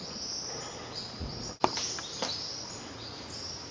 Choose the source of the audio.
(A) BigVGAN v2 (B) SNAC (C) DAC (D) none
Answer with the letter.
D